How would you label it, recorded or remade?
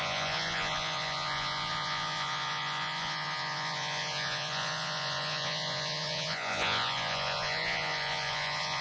remade